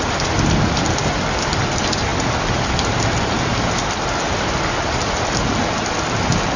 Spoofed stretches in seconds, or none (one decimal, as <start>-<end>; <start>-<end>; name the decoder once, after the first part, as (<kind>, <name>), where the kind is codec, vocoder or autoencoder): none